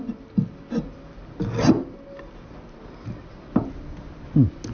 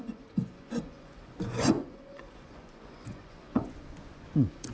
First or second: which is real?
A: first